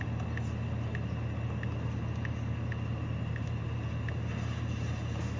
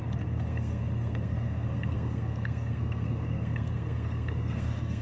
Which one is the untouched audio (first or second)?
first